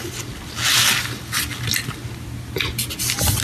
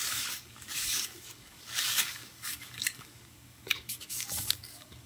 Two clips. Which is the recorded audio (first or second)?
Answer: first